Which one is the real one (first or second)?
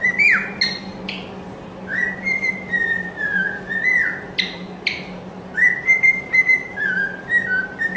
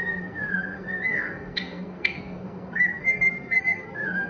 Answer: first